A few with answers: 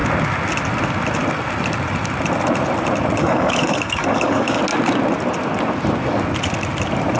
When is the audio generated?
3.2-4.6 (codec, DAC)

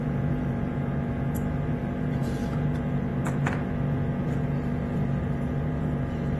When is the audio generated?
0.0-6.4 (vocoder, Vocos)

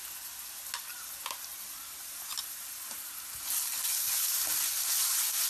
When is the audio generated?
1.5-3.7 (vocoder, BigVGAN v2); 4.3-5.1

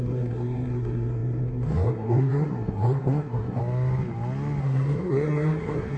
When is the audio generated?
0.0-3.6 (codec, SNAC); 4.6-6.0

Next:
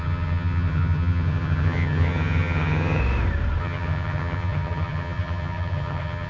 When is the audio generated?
0.0-3.0 (vocoder, HiFi-GAN); 3.6-6.3